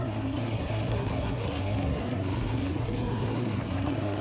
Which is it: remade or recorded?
remade